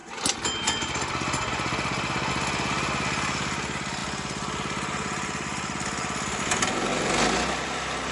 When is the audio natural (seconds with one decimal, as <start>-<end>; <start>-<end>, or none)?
0.0-8.1